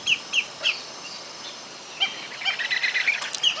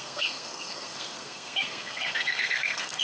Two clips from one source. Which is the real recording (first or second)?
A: first